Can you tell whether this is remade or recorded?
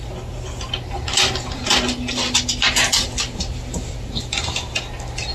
recorded